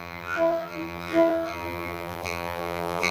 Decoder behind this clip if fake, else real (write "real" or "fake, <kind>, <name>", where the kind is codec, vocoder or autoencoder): fake, vocoder, BigVGAN v2